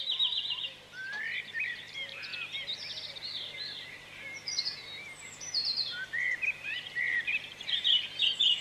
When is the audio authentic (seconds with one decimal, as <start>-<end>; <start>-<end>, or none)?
2.3-3.1